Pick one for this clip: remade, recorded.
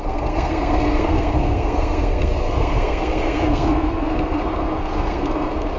remade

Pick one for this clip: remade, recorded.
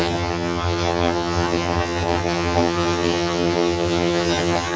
remade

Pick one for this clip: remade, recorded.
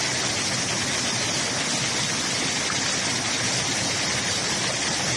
recorded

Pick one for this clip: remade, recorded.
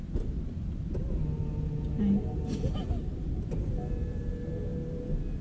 recorded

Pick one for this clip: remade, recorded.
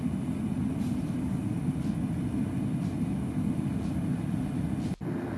recorded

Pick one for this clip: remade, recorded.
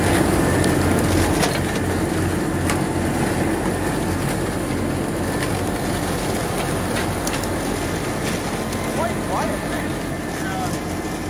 recorded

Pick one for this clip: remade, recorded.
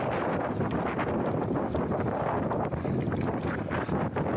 recorded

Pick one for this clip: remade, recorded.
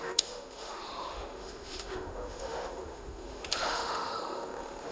remade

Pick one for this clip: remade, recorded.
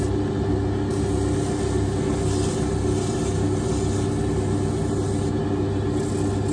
recorded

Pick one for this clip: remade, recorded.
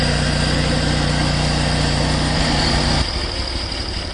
remade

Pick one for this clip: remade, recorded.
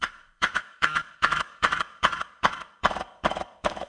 remade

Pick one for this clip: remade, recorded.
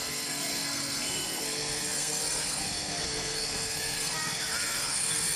remade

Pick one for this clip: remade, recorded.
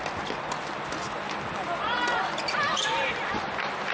recorded